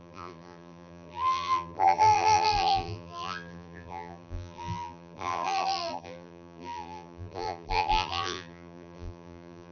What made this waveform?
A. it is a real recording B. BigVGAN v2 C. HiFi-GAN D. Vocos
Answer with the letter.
B